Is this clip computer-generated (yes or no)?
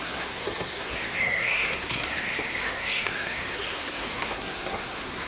yes